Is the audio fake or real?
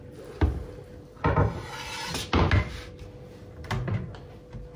real